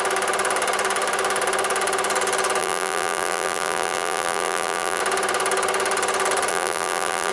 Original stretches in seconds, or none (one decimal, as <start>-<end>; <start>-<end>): 0.0-2.6; 5.0-6.5